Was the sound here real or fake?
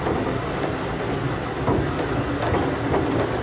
real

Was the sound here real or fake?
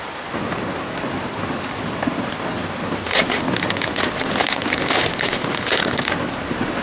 fake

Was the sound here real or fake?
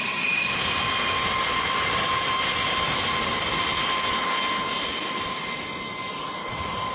real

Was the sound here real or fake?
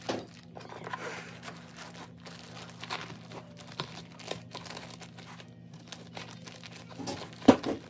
real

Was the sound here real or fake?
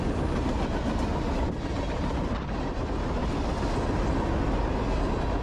real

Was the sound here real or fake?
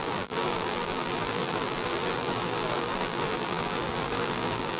fake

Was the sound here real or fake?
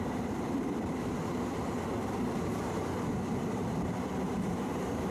fake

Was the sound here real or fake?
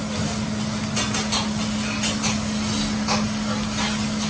real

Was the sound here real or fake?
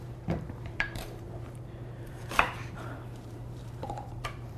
fake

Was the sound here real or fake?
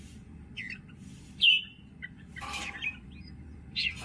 fake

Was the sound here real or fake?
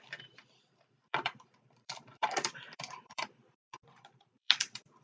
fake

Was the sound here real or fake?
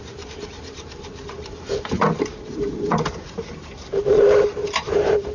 fake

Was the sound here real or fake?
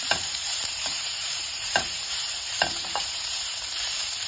fake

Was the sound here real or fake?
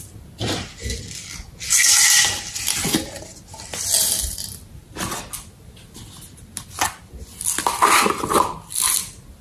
real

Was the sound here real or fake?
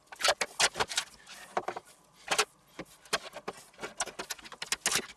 real